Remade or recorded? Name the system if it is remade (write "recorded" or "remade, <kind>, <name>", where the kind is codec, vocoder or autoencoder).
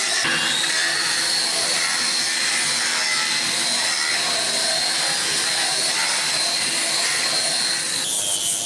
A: recorded